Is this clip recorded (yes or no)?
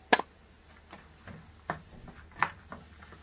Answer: yes